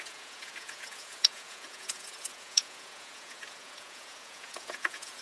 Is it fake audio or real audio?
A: fake